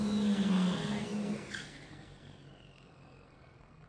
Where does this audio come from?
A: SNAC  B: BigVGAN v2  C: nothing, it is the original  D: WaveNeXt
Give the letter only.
A